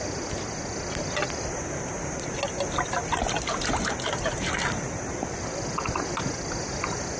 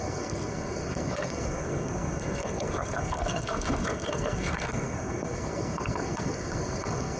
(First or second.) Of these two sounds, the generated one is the second